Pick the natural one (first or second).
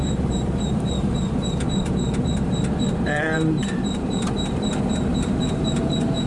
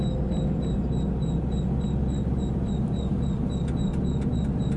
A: second